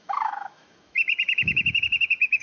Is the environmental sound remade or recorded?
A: remade